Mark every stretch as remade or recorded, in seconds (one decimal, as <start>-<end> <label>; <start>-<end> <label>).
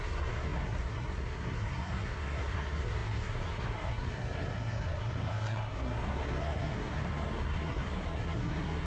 0.0-8.9 remade